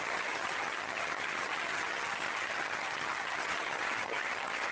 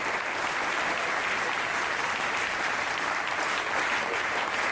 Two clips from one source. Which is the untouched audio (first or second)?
second